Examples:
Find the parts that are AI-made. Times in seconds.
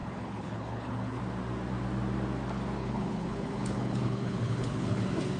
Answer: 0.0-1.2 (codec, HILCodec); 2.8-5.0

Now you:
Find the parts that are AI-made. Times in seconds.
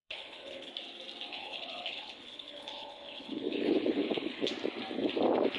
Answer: 0.0-0.7 (codec, HILCodec); 1.3-4.5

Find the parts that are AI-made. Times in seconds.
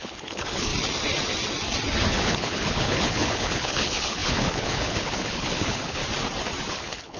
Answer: 0.0-0.7 (codec, HILCodec); 2.1-6.0; 6.7-7.2